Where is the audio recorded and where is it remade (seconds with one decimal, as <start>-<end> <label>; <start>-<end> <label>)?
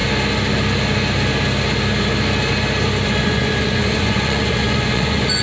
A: 0.0-3.2 recorded; 3.2-5.4 remade